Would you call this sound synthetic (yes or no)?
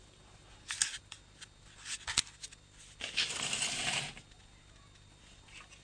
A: no